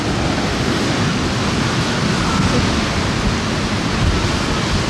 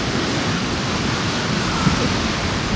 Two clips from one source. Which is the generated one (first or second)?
second